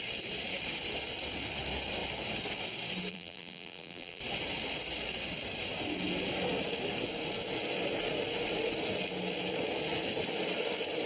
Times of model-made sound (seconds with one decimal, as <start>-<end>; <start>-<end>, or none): 3.1-4.2